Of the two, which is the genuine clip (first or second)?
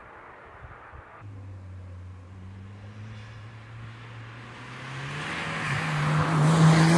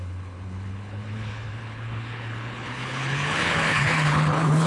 first